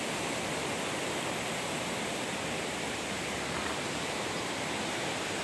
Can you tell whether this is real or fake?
real